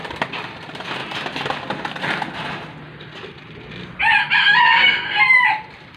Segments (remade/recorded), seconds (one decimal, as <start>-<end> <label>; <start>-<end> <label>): 0.0-1.0 remade; 1.0-4.6 recorded; 4.6-6.0 remade